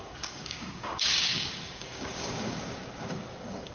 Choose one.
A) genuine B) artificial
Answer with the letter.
B